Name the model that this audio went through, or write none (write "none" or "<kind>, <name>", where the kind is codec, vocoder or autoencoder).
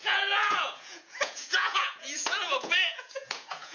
vocoder, Vocos